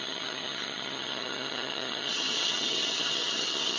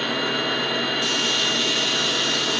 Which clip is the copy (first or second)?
first